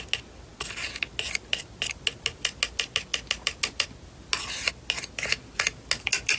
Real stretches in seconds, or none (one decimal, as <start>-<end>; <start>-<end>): 0.0-6.4